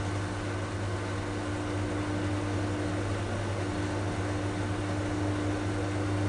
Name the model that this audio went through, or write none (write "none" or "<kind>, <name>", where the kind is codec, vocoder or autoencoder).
none